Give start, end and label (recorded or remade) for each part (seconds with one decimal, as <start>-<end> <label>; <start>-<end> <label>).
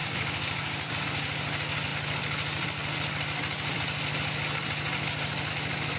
0.0-1.0 remade; 1.0-6.0 recorded